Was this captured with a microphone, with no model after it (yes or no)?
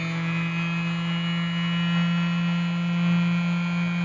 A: yes